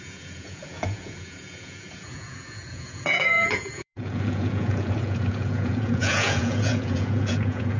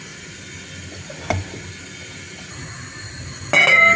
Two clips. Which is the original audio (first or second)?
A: second